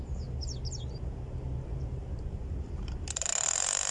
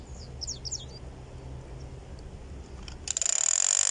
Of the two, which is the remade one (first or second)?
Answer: first